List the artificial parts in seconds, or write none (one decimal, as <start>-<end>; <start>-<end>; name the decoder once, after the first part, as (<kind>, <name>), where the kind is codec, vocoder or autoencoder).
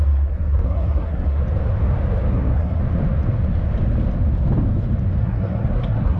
0.0-1.4 (codec, SNAC); 2.3-2.8; 5.2-6.2